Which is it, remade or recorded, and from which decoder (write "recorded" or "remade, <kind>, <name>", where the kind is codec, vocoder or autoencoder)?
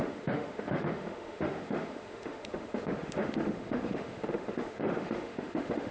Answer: remade, autoencoder, DAC-VAE